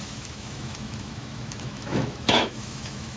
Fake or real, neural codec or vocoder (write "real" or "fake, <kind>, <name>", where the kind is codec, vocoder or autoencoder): fake, autoencoder, DAC-VAE